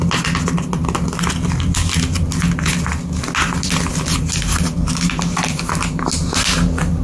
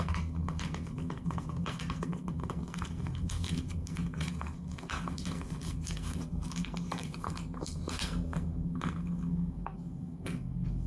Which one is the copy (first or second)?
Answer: second